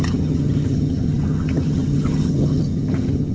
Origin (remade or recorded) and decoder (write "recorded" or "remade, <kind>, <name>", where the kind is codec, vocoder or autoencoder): remade, vocoder, HiFi-GAN